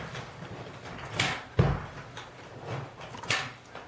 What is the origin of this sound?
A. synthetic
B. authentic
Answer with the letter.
B